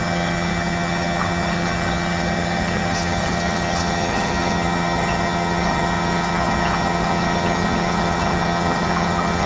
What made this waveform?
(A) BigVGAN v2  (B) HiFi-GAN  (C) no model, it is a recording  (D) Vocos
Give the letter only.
B